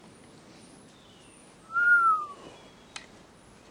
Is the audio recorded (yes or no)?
yes